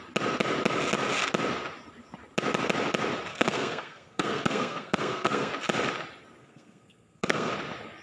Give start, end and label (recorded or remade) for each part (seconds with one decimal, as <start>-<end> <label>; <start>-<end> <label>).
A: 0.0-3.3 recorded; 3.3-5.5 remade; 5.5-6.4 recorded; 6.4-7.5 remade; 7.5-8.0 recorded